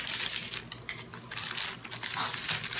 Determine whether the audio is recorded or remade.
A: recorded